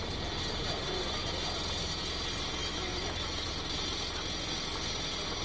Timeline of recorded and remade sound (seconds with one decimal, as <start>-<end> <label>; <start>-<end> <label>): 0.0-2.6 recorded; 2.6-3.5 remade; 3.5-5.4 recorded